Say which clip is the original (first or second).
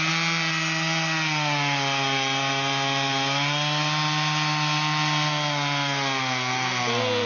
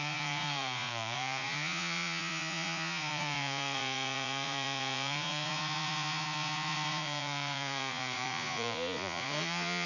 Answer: first